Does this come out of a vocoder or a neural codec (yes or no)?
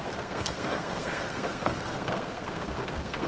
yes